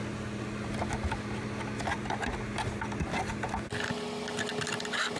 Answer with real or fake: real